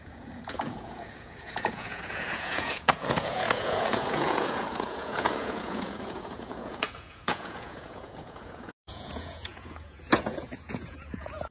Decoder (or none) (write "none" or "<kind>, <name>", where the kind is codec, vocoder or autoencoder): vocoder, Vocos